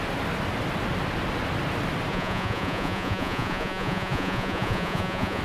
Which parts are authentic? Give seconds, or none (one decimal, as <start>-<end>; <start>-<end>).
0.0-2.1